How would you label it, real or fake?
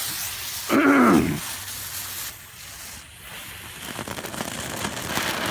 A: real